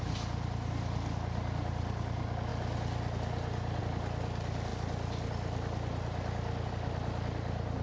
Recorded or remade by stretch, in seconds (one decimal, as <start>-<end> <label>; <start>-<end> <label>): 0.0-7.8 recorded